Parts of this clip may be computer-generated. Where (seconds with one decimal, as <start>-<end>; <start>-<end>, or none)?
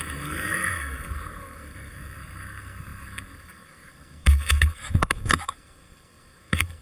0.0-6.8